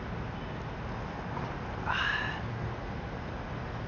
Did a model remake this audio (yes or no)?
no